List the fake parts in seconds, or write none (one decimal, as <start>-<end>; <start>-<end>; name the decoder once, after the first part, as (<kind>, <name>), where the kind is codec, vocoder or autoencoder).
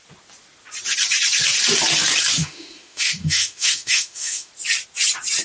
2.4-4.5 (autoencoder, DAC-VAE)